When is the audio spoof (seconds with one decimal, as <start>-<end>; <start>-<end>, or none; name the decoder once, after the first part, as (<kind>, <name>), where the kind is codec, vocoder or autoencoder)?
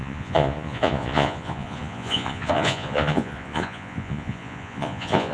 0.0-5.3 (vocoder, Vocos)